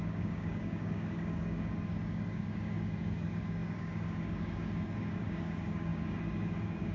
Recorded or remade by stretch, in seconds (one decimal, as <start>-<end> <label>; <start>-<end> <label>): 0.0-6.9 remade